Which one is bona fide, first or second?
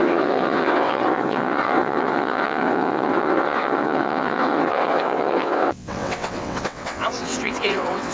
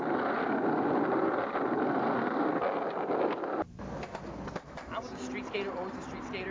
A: second